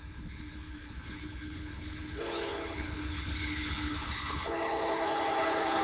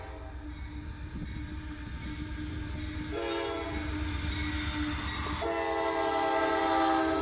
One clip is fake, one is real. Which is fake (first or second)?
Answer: first